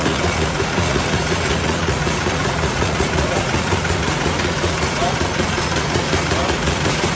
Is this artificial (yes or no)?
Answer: yes